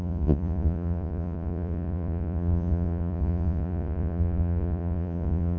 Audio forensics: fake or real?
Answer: fake